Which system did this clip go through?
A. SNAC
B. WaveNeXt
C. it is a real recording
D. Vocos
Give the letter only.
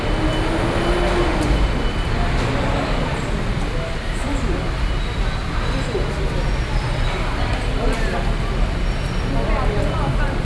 C